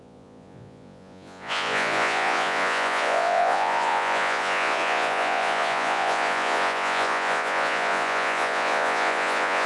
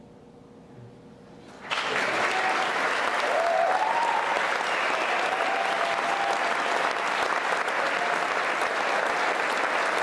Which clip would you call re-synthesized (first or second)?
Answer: first